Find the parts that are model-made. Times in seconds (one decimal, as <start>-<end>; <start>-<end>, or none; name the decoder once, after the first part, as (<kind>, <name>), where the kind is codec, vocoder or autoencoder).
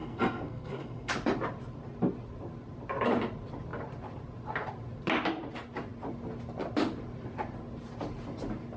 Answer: 0.0-1.1 (codec, SNAC)